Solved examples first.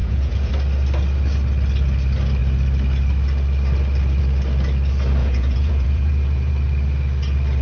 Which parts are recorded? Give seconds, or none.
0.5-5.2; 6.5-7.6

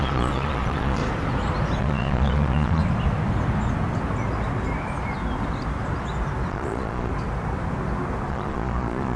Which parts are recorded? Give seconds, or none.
1.0-1.8; 2.8-6.5; 7.1-8.3

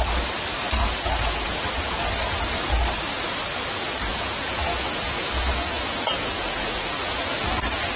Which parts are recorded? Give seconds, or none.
0.0-0.8; 2.0-4.1; 7.5-8.0

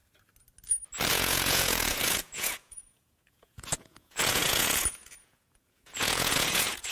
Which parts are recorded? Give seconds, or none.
0.0-1.1

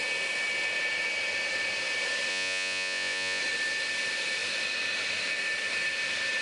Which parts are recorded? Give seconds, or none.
0.0-2.3; 3.4-6.4

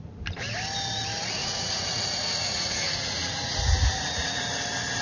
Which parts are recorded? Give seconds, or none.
0.0-1.4; 4.4-5.0

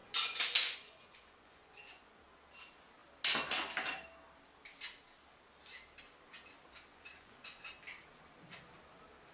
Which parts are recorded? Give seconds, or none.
2.2-6.9; 7.7-9.3